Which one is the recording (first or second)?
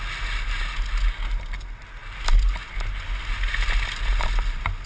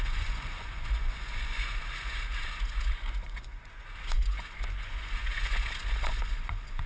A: first